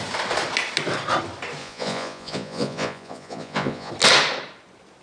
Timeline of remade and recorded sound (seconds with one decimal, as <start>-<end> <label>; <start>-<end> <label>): 0.0-1.6 recorded; 1.6-3.9 remade; 3.9-5.0 recorded